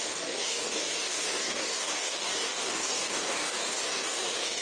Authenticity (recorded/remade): remade